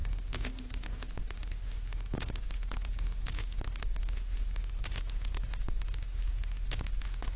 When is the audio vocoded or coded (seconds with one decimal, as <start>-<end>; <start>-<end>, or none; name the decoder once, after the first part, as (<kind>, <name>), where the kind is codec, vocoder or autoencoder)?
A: none